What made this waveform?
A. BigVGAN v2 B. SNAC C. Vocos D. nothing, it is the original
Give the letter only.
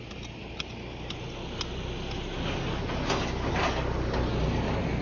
D